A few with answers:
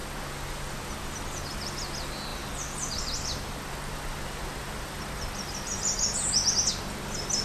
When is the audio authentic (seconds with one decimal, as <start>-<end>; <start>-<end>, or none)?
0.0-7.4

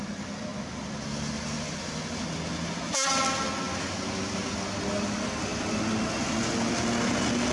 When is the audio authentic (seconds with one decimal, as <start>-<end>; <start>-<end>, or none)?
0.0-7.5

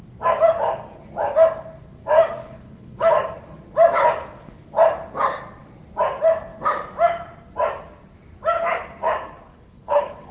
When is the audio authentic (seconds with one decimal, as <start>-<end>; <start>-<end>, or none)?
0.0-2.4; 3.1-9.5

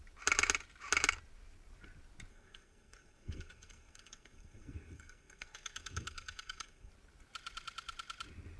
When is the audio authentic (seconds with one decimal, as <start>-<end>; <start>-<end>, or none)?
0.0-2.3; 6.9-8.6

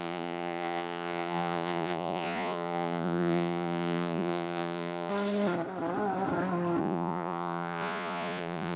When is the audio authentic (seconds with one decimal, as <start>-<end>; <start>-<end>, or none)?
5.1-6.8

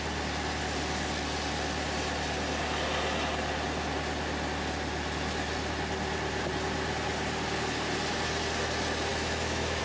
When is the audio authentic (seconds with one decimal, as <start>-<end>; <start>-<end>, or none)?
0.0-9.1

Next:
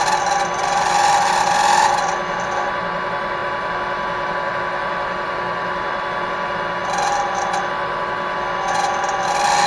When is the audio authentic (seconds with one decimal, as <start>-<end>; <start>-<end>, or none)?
0.0-9.7

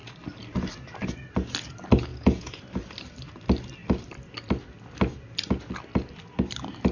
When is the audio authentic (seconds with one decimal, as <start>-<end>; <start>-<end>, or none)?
0.0-2.1; 2.6-6.9